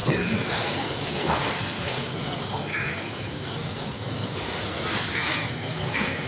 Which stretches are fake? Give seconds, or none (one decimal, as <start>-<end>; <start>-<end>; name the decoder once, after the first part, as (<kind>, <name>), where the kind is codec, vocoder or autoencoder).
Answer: 0.0-6.3 (codec, SNAC)